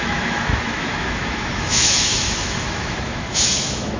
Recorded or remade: remade